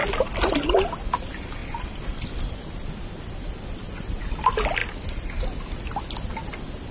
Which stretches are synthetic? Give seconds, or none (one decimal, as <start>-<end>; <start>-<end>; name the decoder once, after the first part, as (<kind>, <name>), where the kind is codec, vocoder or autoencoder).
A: none